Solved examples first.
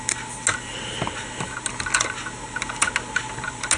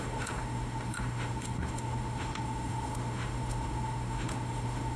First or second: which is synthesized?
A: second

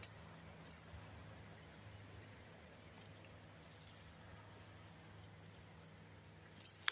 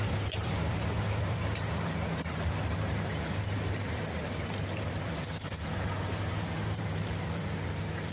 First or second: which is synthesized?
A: second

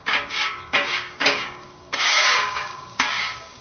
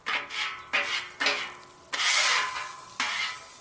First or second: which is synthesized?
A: first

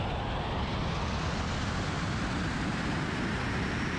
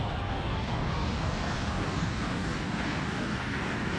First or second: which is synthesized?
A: second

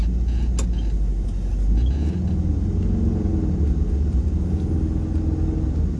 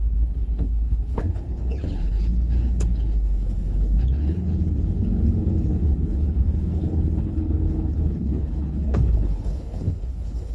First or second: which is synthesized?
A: second